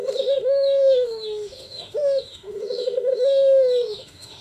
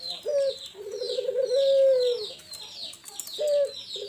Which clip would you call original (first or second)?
second